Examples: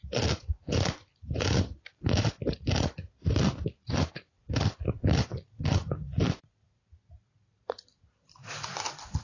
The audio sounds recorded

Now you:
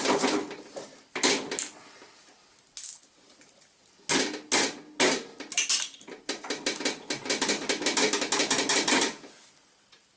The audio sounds recorded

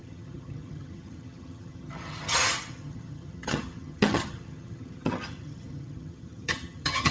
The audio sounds remade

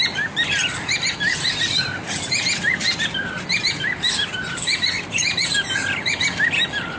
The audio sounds recorded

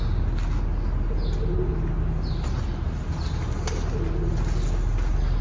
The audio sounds recorded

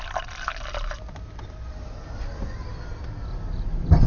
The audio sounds recorded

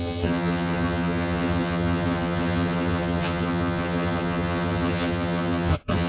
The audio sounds remade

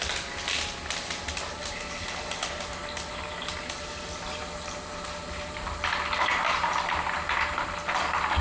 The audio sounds recorded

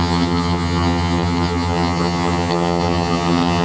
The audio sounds remade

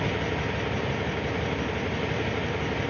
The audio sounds recorded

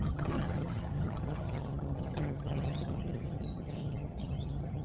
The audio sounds remade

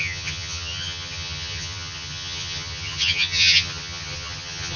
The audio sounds remade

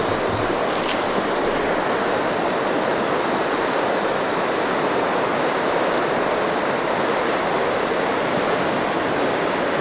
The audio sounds recorded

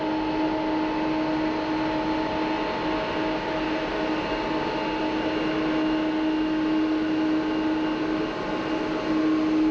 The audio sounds recorded